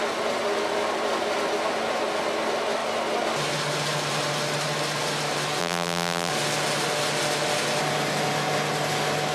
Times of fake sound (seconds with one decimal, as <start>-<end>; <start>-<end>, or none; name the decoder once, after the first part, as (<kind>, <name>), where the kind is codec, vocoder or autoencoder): 5.6-6.3 (vocoder, BigVGAN v2)